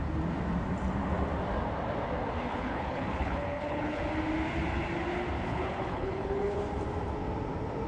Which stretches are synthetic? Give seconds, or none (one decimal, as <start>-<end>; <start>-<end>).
2.5-4.0; 5.5-6.6